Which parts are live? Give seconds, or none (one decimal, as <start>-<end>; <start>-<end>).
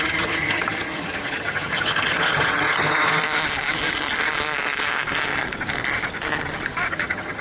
3.2-6.9